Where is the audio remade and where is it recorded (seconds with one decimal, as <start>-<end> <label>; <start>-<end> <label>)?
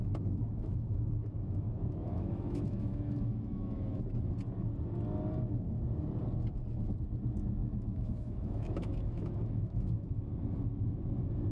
0.0-4.0 remade; 4.0-7.6 recorded; 7.6-10.1 remade; 10.1-11.5 recorded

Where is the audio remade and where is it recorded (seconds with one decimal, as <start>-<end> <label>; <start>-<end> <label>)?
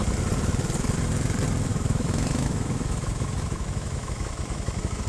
0.0-1.7 recorded; 1.7-5.1 remade